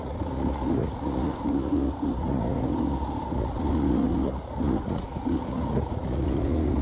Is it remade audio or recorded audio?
remade